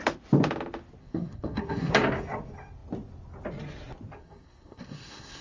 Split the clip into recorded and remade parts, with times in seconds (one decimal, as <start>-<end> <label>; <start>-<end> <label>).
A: 0.0-1.0 recorded; 1.0-1.9 remade; 1.9-4.2 recorded; 4.2-5.4 remade